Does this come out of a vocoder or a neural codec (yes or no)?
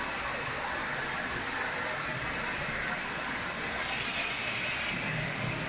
no